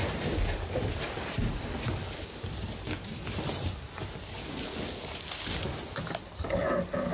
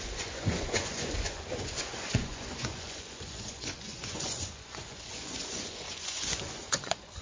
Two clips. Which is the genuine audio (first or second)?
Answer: first